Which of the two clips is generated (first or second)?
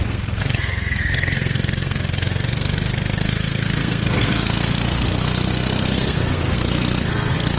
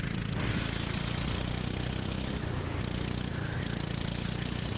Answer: first